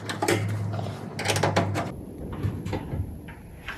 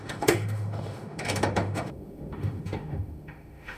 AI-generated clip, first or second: second